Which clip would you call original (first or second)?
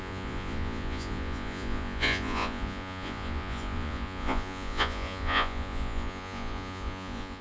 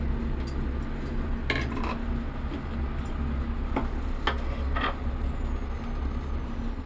second